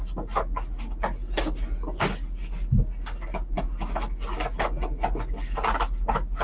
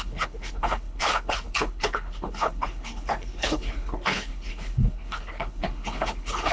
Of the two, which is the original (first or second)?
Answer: first